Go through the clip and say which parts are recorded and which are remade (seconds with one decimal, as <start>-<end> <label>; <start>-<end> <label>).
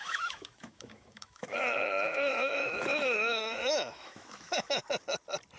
0.0-4.8 remade; 4.8-5.6 recorded